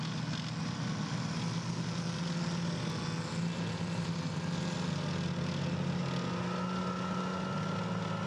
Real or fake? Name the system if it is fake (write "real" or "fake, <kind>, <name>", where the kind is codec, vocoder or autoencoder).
real